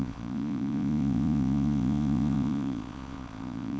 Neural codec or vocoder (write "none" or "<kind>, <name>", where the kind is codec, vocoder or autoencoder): vocoder, Vocos